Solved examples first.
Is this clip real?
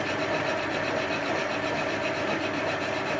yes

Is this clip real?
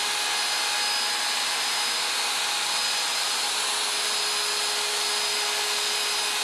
yes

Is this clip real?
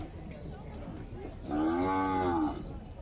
yes